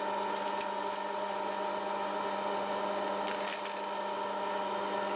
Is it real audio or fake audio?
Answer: real